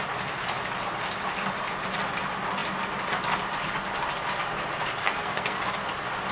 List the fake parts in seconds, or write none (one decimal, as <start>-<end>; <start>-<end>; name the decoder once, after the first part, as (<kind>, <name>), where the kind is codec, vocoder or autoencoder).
5.0-5.6 (codec, SNAC)